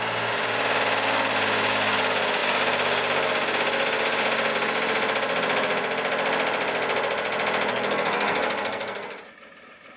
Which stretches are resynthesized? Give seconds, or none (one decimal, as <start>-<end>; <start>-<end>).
7.7-9.2